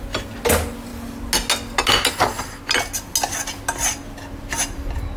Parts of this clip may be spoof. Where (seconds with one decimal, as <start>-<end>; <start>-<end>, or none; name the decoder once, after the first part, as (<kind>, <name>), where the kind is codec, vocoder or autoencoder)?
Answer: none